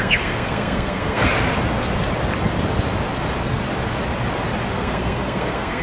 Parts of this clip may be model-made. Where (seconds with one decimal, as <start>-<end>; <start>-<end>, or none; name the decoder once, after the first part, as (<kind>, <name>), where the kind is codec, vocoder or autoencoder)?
0.0-1.3 (codec, SNAC); 4.7-5.8